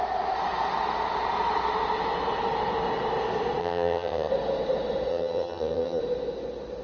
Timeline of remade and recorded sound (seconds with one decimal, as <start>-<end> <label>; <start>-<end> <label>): 0.0-3.6 recorded; 3.6-4.3 remade; 4.3-5.1 recorded; 5.1-6.0 remade; 6.0-6.8 recorded